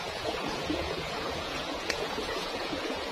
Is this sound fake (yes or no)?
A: yes